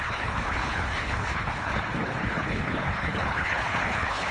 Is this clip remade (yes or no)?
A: yes